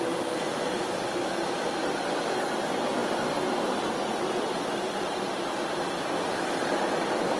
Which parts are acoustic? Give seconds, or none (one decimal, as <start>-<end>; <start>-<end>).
0.0-7.4